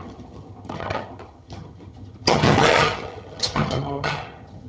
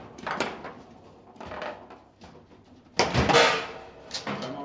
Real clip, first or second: second